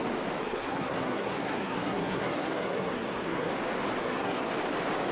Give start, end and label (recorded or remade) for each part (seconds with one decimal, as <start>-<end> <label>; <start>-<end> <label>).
0.0-0.4 recorded; 0.4-3.5 remade; 3.5-4.0 recorded; 4.0-4.5 remade; 4.5-5.1 recorded